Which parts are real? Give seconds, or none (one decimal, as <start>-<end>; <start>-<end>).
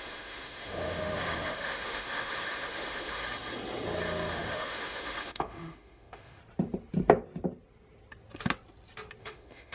3.2-4.3; 6.4-9.2